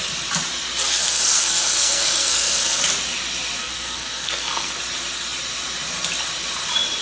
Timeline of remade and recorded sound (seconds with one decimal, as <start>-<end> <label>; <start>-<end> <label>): 0.0-0.8 recorded; 0.8-2.8 remade; 2.8-3.6 recorded; 3.6-4.8 remade; 4.8-7.0 recorded